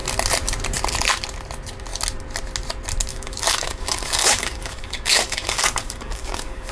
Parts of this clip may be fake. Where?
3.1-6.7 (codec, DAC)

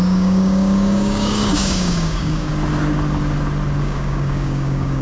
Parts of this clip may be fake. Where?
0.0-2.5 (codec, DAC); 3.8-5.0

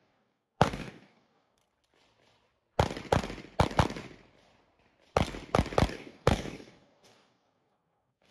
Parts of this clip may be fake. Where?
0.0-1.6 (codec, DAC); 5.9-8.3

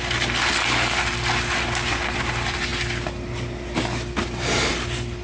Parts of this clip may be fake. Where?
none